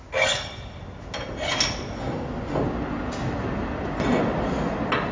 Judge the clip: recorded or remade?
recorded